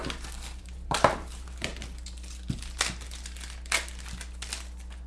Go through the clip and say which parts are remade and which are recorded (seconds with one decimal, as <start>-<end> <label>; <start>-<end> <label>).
0.0-0.6 recorded; 0.6-1.7 remade; 1.7-5.1 recorded